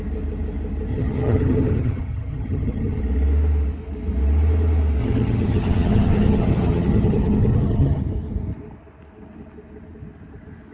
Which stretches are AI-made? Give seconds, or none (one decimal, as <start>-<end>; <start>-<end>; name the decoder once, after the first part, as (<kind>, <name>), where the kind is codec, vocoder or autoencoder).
0.9-3.0 (vocoder, HiFi-GAN); 5.0-8.0